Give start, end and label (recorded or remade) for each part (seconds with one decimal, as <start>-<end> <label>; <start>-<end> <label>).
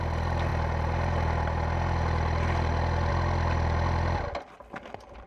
0.0-5.3 recorded